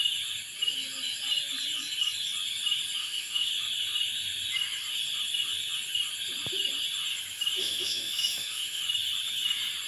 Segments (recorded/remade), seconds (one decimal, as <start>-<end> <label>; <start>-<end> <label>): 0.0-3.0 recorded; 3.0-3.5 remade; 3.5-7.6 recorded; 7.6-8.8 remade; 8.8-9.9 recorded